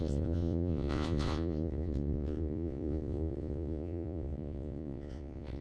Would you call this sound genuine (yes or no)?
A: no